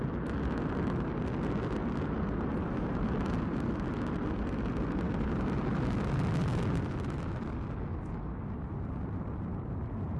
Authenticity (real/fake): real